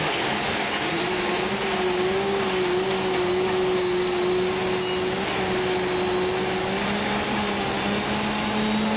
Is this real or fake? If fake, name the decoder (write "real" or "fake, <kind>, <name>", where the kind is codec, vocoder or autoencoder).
real